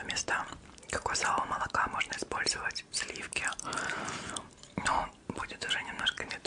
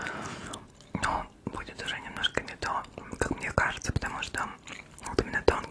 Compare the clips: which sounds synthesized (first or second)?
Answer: first